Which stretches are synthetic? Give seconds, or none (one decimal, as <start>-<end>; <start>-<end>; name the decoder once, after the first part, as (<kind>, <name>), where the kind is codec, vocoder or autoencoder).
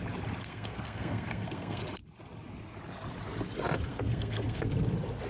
0.4-1.8 (codec, SNAC); 3.9-4.7